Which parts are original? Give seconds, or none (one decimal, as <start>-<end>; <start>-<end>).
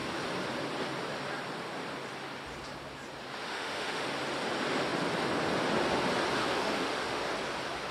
0.0-3.4; 4.0-6.4; 7.2-7.9